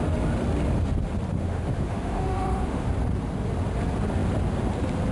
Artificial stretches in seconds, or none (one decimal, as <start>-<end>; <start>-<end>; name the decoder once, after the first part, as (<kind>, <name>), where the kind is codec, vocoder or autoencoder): 1.3-2.9 (autoencoder, DAC-VAE)